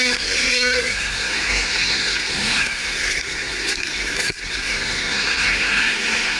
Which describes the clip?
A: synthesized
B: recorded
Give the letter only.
A